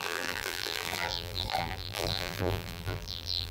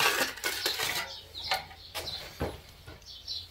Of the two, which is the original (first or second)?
second